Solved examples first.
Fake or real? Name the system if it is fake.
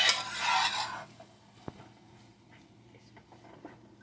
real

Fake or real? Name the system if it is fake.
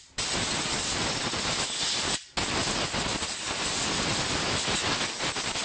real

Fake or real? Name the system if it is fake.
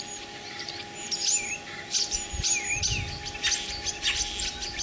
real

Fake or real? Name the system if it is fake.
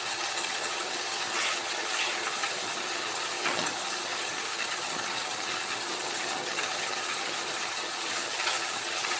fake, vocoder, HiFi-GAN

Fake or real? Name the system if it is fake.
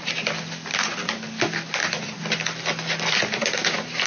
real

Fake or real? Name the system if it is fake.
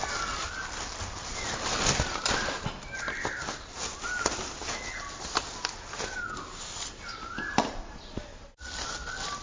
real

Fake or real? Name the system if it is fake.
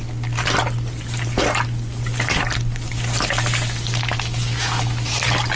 real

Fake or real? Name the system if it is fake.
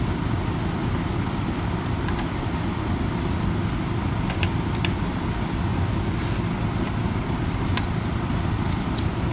real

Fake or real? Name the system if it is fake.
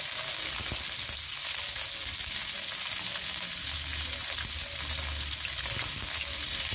real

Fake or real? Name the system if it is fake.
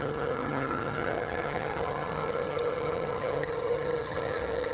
fake, vocoder, HiFi-GAN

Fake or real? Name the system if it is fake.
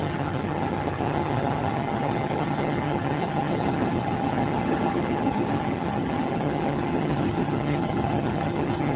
fake, vocoder, HiFi-GAN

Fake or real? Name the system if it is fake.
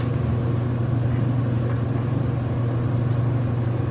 real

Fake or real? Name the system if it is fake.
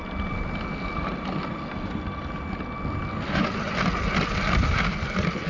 real